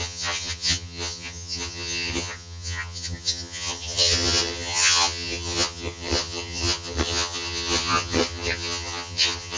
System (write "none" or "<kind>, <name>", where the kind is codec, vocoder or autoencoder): vocoder, HiFi-GAN